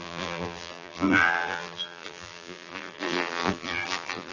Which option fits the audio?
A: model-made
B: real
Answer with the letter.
A